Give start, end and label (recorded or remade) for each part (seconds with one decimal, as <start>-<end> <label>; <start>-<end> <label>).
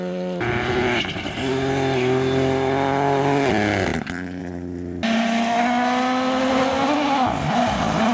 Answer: 0.0-8.1 recorded